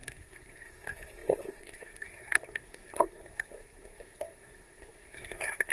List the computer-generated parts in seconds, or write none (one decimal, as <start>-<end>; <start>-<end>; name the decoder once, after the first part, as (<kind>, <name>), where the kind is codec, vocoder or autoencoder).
0.0-5.7 (codec, SNAC)